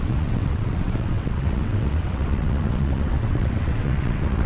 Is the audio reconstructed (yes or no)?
yes